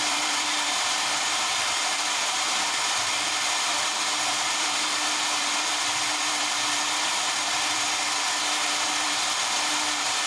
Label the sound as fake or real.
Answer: fake